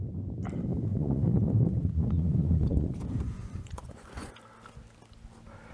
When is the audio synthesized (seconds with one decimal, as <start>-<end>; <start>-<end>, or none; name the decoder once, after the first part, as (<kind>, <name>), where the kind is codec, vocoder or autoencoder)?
0.9-4.3 (vocoder, Vocos)